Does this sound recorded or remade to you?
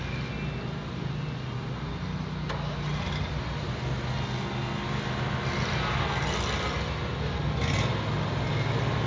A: recorded